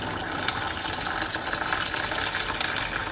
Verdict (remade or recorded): recorded